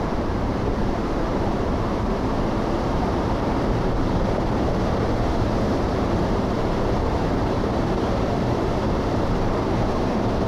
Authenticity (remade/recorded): remade